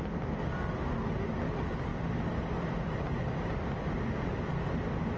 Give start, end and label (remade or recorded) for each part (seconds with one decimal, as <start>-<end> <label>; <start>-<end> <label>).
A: 0.0-5.2 recorded